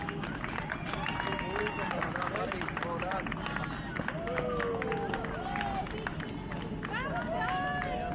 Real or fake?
real